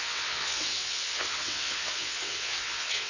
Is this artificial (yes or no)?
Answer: yes